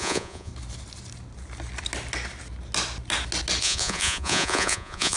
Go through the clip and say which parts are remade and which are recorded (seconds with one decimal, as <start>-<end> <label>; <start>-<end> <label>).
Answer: 0.0-0.5 remade; 0.5-3.6 recorded; 3.6-5.2 remade